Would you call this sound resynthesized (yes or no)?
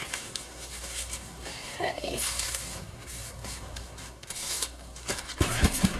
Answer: yes